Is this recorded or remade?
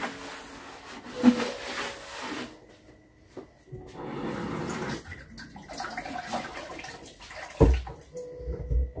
recorded